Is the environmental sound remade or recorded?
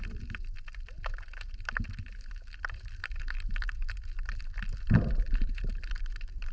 remade